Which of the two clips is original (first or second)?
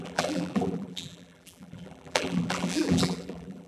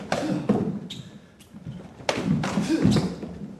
second